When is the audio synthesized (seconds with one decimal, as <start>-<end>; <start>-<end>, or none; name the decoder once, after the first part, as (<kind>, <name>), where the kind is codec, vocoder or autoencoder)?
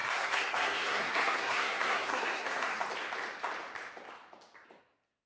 0.0-2.7 (codec, SNAC); 4.8-5.3